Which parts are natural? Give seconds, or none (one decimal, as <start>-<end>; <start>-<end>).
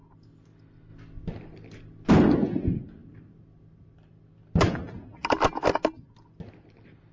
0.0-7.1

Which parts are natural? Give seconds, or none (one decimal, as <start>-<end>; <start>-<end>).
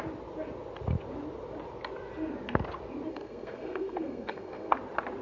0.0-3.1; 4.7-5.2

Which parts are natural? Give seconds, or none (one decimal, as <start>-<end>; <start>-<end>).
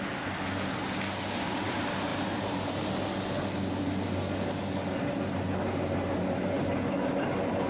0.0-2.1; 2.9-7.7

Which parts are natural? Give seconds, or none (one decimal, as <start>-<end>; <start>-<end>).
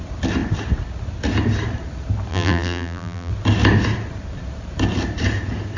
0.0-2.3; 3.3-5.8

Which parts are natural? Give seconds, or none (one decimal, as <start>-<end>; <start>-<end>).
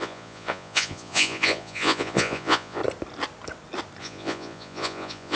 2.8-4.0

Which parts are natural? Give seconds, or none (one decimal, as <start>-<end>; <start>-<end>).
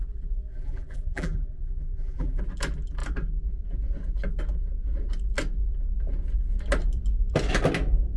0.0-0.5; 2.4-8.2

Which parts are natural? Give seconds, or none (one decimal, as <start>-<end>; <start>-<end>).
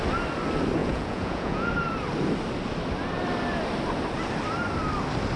0.0-0.8; 1.7-5.4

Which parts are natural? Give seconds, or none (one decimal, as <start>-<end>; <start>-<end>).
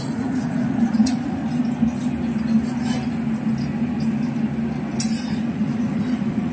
1.4-5.3